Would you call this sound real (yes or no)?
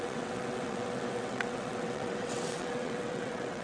no